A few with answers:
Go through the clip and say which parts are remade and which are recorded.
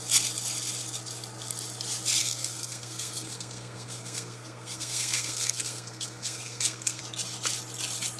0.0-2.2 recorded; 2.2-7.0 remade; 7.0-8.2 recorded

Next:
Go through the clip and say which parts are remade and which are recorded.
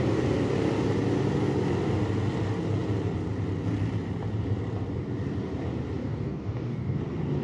0.0-6.0 recorded; 6.0-7.0 remade; 7.0-7.4 recorded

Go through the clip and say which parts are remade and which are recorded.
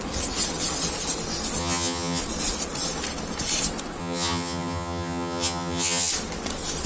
0.0-1.6 recorded; 1.6-2.2 remade; 2.2-4.0 recorded; 4.0-6.1 remade; 6.1-6.9 recorded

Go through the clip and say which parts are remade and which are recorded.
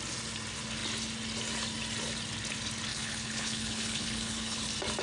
0.0-2.9 recorded; 2.9-4.6 remade; 4.6-5.0 recorded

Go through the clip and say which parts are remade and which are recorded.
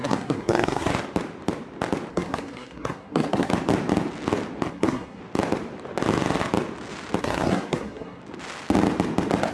0.0-0.9 remade; 0.9-2.1 recorded; 2.1-3.5 remade; 3.5-4.7 recorded; 4.7-5.2 remade; 5.2-7.2 recorded; 7.2-8.2 remade; 8.2-9.5 recorded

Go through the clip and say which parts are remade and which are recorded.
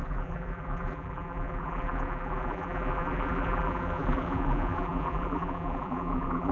0.0-6.5 remade